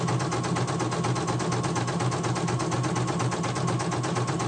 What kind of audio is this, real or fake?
real